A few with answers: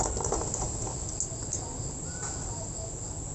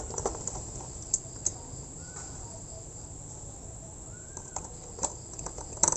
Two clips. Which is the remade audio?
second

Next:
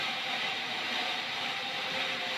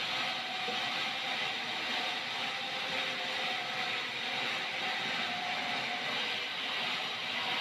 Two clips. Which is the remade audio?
first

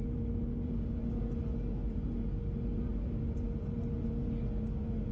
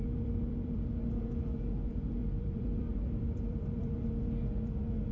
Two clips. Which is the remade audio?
second